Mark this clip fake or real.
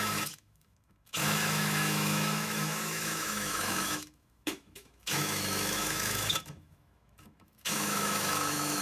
fake